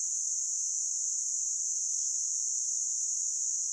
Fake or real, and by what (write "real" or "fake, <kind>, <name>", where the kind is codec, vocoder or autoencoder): real